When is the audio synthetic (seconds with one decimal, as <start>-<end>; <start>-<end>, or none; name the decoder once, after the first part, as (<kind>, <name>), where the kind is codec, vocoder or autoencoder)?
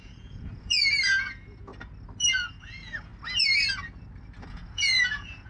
0.0-1.7 (vocoder, Vocos); 2.5-3.1; 4.5-5.5